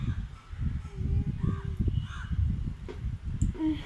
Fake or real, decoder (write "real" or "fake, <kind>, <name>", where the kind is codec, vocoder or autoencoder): real